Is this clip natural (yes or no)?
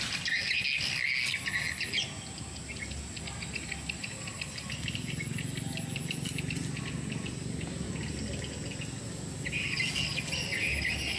yes